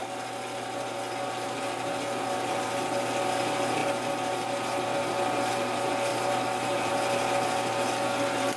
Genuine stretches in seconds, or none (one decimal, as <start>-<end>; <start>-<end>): 0.0-6.1; 6.9-8.6